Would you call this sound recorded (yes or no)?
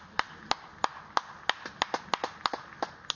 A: yes